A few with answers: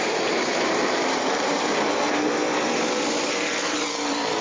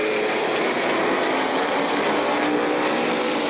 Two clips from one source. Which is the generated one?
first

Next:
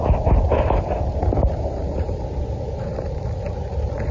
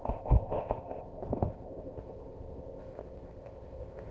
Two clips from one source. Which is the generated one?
second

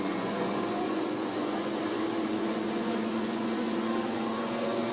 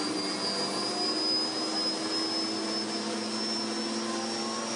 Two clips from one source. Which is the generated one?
first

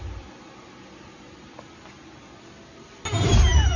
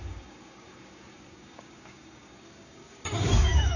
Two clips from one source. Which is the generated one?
second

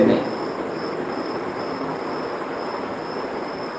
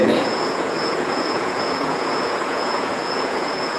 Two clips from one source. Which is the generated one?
second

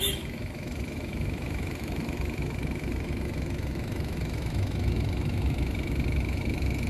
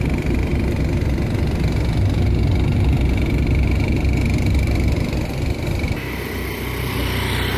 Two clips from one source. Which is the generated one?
first